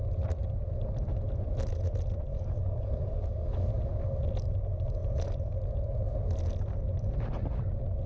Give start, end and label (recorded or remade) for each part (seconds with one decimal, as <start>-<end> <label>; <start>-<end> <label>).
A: 0.0-2.3 recorded; 2.3-3.7 remade; 3.7-8.1 recorded